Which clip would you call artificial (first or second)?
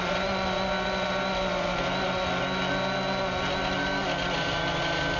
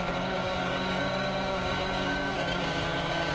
second